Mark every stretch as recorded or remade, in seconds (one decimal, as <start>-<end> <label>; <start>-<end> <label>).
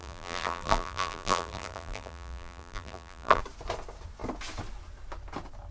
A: 0.0-3.4 remade; 3.4-5.7 recorded